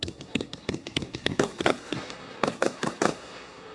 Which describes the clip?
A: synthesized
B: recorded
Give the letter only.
A